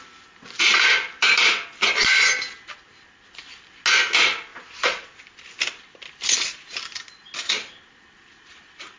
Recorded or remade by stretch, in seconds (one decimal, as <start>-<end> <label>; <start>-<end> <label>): 0.0-4.5 recorded; 4.5-5.2 remade; 5.2-9.0 recorded